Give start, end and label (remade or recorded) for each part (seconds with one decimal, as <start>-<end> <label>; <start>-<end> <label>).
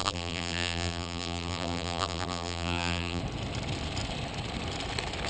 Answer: 0.0-3.2 remade; 3.2-5.3 recorded